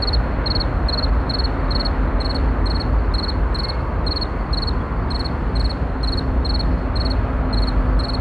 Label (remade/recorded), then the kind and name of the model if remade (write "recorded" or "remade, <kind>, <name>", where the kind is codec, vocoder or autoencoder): recorded